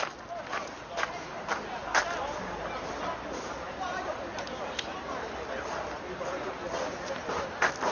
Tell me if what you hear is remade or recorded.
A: recorded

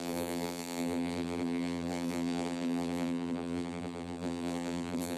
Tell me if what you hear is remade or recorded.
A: remade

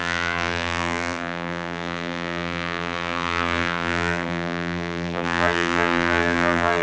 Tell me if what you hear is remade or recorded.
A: remade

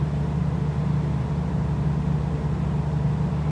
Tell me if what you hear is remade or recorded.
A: recorded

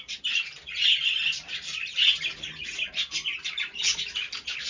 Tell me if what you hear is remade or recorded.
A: recorded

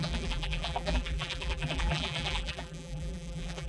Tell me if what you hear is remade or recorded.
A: remade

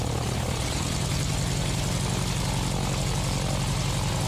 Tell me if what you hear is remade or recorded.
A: recorded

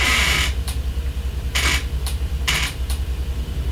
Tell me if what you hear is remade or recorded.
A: remade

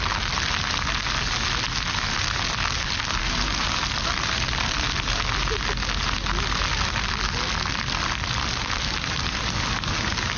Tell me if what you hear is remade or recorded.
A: recorded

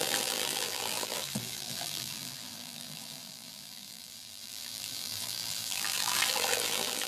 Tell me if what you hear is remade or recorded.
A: remade